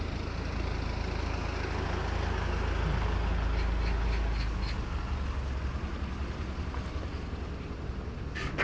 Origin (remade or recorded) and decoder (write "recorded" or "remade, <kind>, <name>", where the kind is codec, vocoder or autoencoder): recorded